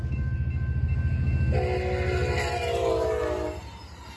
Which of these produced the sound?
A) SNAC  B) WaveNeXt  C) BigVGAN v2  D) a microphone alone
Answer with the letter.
D